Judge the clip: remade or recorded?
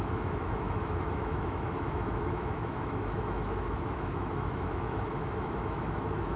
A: remade